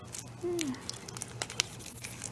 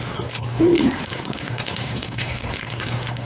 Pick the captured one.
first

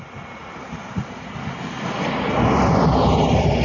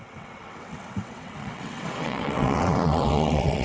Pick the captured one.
first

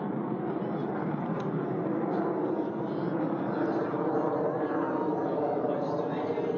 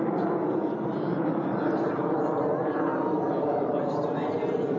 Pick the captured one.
first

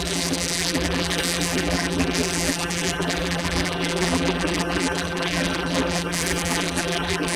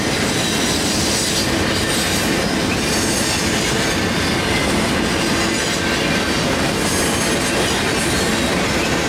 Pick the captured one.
second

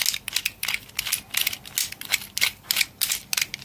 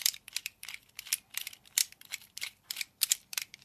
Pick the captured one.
first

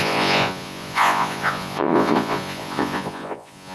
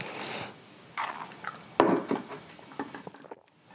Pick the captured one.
second